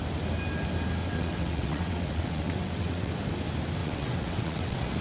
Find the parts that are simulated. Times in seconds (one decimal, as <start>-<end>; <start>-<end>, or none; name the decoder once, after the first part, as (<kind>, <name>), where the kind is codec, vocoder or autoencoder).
1.0-3.1 (vocoder, WaveNeXt); 3.8-5.0